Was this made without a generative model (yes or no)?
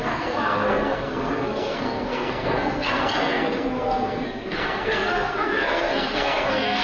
no